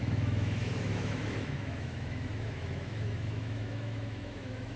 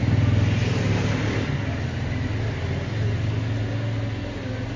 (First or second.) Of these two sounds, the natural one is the second